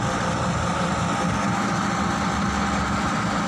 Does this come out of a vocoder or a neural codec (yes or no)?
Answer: yes